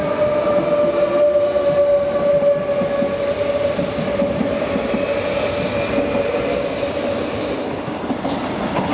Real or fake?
real